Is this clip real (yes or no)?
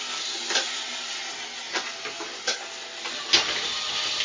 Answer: yes